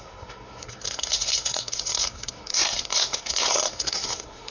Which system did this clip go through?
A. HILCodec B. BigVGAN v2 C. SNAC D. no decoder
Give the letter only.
C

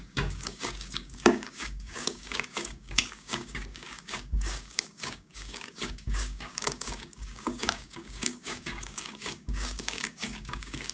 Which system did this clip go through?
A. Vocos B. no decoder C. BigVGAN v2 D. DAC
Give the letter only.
D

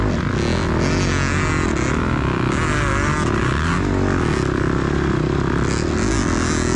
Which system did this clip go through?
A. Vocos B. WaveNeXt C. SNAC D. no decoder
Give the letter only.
D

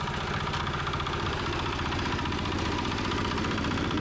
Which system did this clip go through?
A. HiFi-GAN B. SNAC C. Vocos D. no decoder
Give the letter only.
D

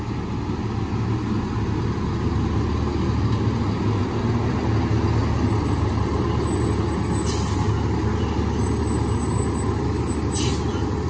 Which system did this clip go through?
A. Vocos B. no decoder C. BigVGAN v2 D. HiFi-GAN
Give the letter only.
B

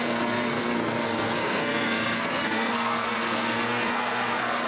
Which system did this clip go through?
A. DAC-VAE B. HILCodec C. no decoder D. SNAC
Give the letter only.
D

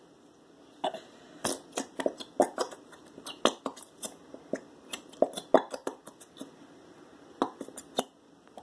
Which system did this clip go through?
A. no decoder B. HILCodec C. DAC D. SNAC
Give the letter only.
A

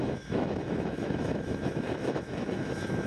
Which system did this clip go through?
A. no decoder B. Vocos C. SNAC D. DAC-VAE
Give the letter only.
D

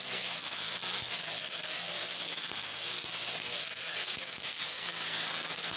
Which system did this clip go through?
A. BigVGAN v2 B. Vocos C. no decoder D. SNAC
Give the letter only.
D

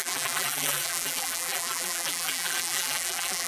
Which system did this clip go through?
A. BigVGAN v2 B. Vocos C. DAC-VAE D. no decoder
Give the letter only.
A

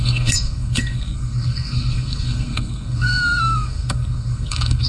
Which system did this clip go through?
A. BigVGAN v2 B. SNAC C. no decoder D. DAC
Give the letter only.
B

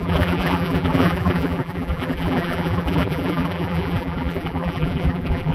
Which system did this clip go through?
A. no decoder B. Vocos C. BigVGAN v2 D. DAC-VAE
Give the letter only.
C